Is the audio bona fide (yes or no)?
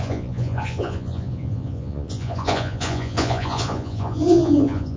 no